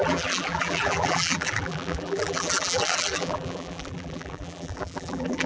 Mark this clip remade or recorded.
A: remade